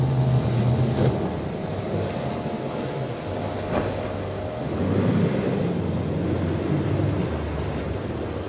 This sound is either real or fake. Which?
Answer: real